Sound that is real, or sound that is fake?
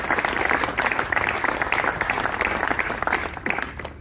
real